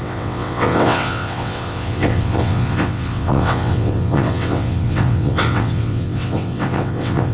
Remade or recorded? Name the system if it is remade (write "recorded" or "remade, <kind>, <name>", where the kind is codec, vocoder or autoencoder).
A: remade, vocoder, WaveNeXt